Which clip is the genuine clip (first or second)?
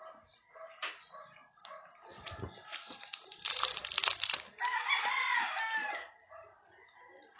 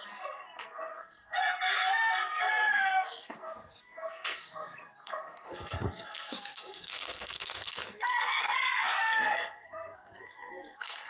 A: first